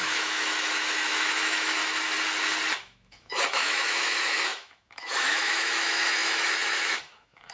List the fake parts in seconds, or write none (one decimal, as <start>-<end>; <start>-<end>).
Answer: 0.0-1.8; 2.8-7.5